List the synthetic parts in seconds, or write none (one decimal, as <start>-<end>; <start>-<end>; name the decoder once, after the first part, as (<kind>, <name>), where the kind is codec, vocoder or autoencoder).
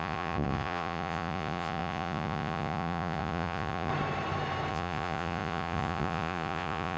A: 0.0-3.9 (vocoder, Vocos); 4.7-7.0